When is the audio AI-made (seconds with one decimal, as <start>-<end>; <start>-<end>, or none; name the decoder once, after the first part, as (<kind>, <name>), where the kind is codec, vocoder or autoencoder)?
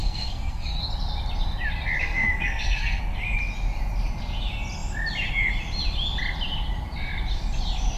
0.0-0.8 (codec, SNAC); 2.0-3.0